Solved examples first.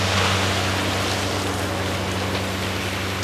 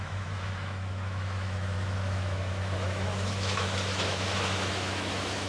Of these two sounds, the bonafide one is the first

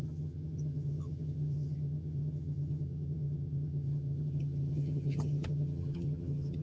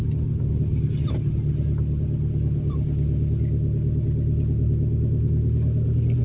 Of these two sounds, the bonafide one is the second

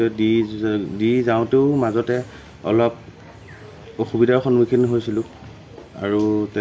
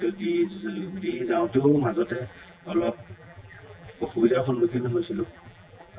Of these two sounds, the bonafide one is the first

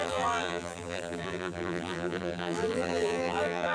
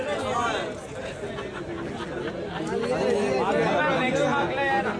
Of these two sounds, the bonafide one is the second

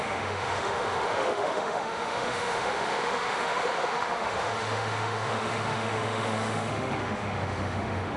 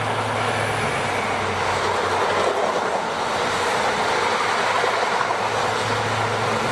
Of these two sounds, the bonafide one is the second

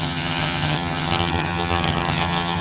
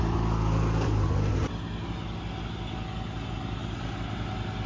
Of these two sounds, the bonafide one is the second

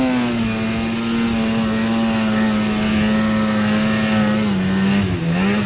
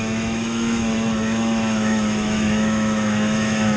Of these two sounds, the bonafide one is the first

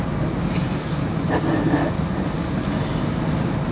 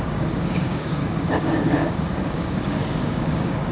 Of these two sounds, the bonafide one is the first